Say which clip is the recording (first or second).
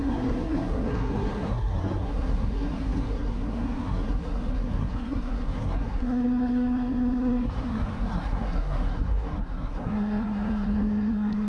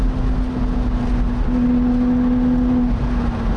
second